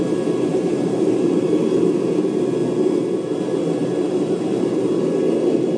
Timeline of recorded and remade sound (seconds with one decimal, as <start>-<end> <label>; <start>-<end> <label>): 0.0-0.5 recorded; 0.5-1.6 remade; 1.6-3.8 recorded; 3.8-4.9 remade; 4.9-5.8 recorded